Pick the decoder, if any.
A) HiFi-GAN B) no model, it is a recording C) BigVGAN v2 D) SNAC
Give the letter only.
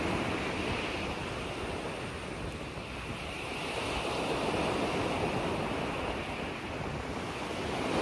B